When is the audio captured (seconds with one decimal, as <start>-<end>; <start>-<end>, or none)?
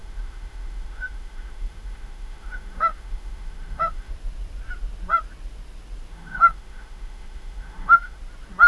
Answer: 4.1-6.1; 8.2-8.7